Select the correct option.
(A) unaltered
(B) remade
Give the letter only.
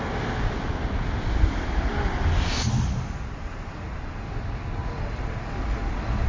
A